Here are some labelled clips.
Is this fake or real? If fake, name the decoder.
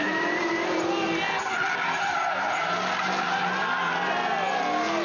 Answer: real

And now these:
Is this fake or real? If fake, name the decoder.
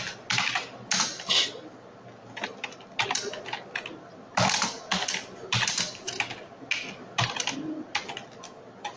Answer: real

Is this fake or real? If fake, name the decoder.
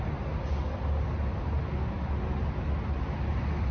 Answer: real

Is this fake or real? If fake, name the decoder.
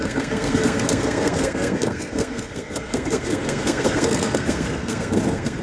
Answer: fake, codec, SNAC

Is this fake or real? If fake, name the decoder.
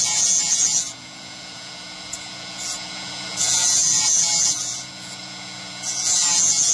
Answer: fake, vocoder, Vocos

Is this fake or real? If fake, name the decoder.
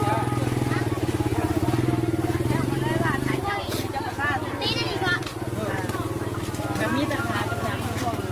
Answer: real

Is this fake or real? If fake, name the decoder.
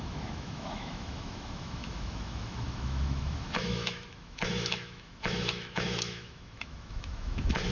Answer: fake, autoencoder, DAC-VAE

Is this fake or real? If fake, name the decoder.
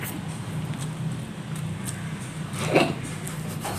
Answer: real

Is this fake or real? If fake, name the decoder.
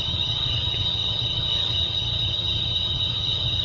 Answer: fake, vocoder, HiFi-GAN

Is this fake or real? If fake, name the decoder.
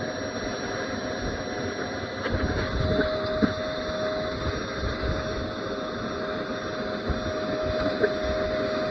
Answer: real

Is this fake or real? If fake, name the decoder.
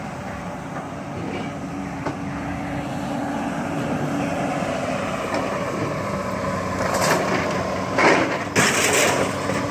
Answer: real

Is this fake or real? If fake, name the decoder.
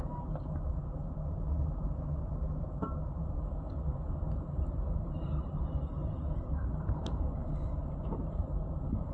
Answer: fake, vocoder, BigVGAN v2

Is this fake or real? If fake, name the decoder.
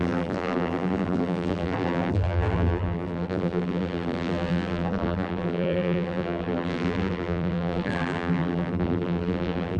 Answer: fake, vocoder, BigVGAN v2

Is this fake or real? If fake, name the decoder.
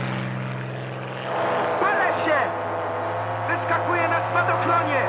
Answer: real